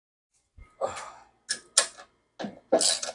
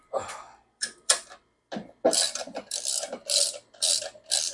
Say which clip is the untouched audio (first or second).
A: first